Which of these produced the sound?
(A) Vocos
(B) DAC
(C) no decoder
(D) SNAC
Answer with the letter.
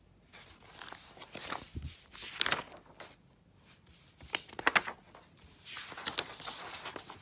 C